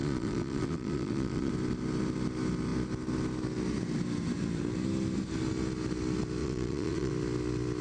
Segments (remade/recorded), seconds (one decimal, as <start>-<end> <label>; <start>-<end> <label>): 0.0-1.5 remade; 1.5-6.4 recorded; 6.4-7.1 remade; 7.1-7.8 recorded